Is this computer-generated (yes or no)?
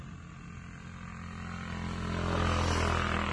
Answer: no